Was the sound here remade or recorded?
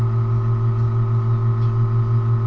recorded